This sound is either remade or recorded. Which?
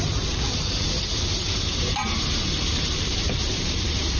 remade